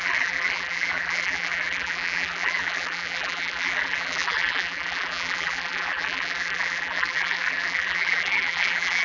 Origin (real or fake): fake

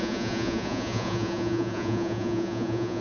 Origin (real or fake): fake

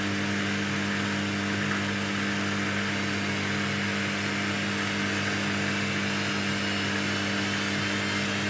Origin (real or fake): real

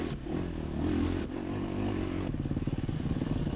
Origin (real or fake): fake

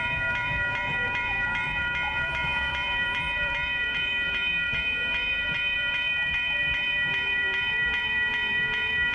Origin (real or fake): fake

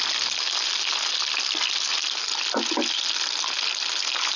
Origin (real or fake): real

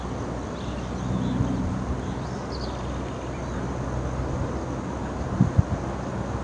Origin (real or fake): real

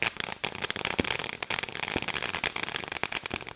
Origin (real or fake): real